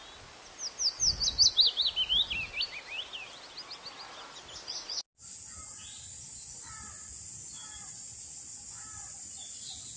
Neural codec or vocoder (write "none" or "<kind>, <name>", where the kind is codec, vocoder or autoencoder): none